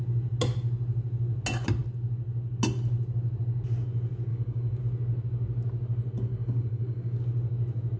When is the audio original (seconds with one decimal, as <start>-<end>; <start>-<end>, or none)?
0.0-4.3; 4.8-6.3; 7.2-8.0

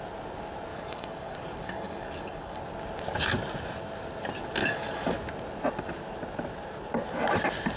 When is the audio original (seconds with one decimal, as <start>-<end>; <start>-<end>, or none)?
0.0-0.7; 2.6-4.6; 5.1-7.8

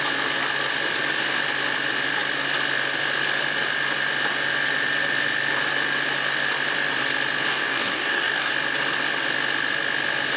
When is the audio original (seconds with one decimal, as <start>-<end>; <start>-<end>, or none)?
0.0-7.5; 8.5-10.4